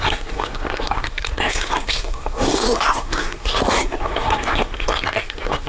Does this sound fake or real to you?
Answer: fake